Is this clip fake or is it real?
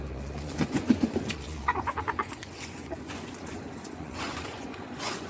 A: fake